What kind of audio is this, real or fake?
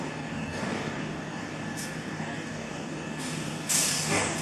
fake